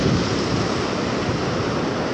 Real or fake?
real